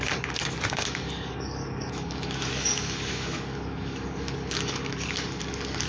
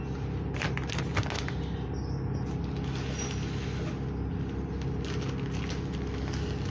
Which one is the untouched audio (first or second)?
second